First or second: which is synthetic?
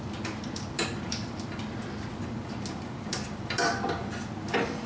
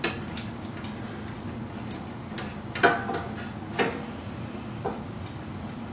first